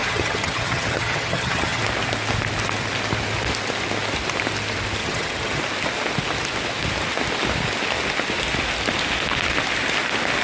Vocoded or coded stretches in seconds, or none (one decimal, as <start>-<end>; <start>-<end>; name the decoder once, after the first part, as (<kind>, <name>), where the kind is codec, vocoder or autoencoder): 0.0-1.8 (vocoder, HiFi-GAN); 5.0-5.6